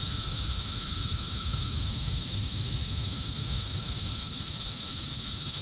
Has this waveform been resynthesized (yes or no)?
yes